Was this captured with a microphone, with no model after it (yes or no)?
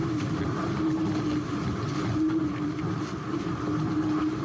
yes